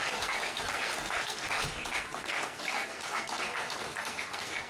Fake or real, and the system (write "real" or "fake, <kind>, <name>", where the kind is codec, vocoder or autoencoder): fake, codec, SNAC